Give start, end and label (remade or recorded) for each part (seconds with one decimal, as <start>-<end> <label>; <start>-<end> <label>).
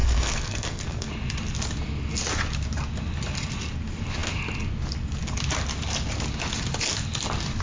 0.0-1.1 remade; 1.1-7.6 recorded